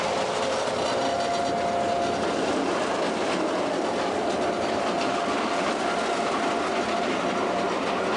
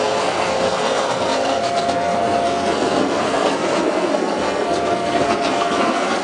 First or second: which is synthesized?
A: second